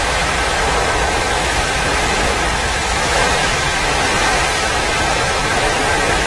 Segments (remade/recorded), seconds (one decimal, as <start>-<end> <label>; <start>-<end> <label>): 0.0-6.3 remade